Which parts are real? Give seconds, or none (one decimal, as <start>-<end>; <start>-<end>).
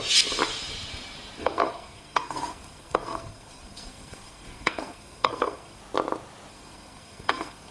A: 0.0-1.4; 5.8-6.5